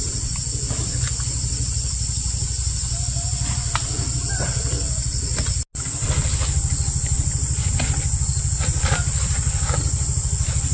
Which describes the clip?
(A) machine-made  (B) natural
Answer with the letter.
B